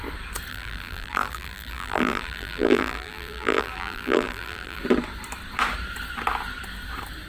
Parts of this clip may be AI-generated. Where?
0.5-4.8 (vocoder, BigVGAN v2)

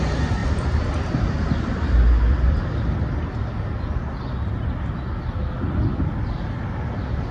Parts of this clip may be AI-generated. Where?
none

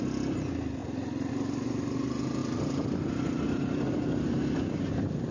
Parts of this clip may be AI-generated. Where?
0.8-1.3 (vocoder, BigVGAN v2); 2.4-3.1

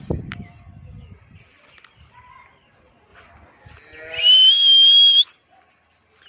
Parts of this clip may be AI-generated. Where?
none

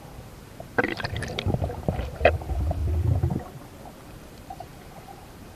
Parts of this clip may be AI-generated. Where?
0.0-2.8 (vocoder, BigVGAN v2); 3.8-5.6

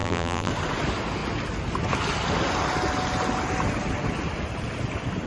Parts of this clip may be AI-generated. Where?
0.0-0.5 (vocoder, BigVGAN v2)

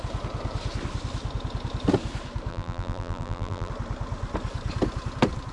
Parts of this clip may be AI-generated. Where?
2.5-3.7 (vocoder, BigVGAN v2)